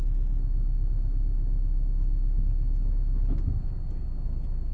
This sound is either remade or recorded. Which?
recorded